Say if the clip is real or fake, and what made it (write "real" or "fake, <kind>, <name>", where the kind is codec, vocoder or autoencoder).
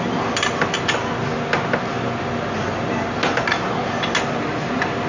real